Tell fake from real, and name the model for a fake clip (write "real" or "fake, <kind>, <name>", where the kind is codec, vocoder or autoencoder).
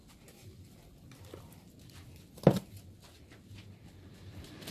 real